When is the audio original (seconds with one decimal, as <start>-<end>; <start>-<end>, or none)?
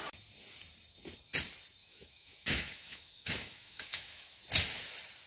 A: 0.0-1.8; 4.4-5.3